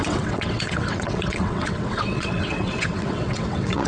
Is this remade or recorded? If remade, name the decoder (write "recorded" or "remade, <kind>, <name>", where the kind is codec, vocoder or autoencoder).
remade, vocoder, WaveNeXt